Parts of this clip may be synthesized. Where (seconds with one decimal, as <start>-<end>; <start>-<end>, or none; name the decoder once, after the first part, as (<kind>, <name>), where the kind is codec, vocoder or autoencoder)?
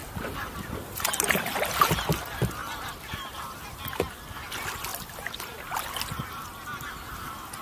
none